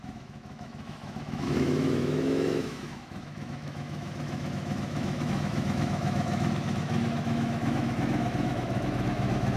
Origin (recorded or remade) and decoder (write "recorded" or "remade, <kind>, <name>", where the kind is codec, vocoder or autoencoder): remade, autoencoder, DAC-VAE